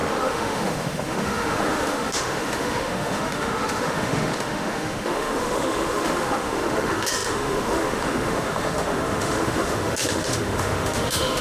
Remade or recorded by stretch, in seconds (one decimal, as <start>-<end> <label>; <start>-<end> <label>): 0.0-11.4 remade